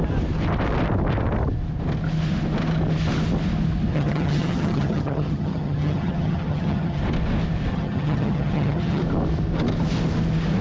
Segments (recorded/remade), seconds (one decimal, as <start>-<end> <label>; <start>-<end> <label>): 0.0-3.9 recorded; 3.9-7.0 remade; 7.0-7.7 recorded; 7.7-9.0 remade; 9.0-10.6 recorded